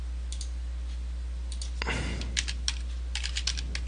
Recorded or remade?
recorded